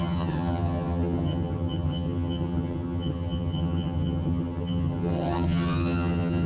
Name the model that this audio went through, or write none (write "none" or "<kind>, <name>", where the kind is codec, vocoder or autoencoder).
vocoder, HiFi-GAN